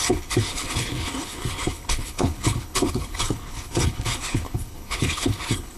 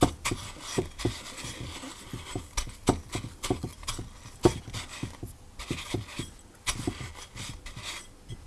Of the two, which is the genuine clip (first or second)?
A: second